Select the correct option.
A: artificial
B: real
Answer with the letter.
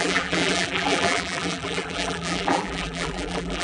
A